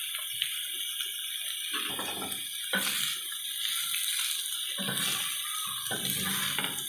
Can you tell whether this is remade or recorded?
recorded